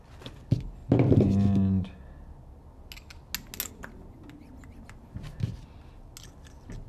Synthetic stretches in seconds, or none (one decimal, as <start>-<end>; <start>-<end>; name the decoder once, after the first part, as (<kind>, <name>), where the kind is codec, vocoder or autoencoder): none